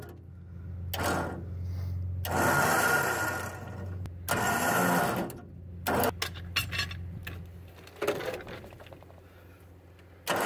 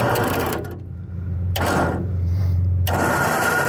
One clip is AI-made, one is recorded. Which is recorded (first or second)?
first